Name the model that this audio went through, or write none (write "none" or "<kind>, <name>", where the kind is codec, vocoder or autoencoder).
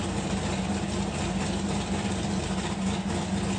none